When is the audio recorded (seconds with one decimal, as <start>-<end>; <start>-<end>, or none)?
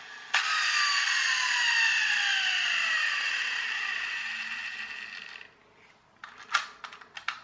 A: 0.0-7.4